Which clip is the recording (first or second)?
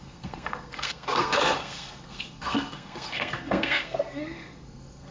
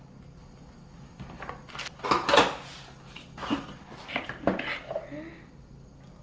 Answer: second